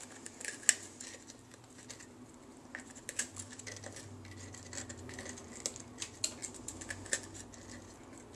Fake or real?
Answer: real